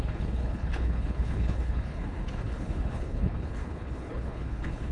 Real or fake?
fake